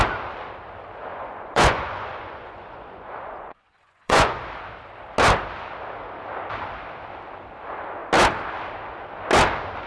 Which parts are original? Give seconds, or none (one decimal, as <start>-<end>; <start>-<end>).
0.0-1.1; 4.4-9.9